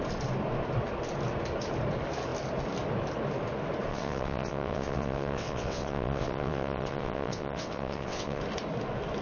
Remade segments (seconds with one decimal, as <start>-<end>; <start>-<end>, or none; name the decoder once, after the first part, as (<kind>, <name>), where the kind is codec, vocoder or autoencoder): 3.9-8.4 (vocoder, WaveNeXt)